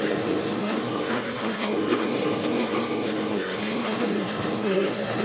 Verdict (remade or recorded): remade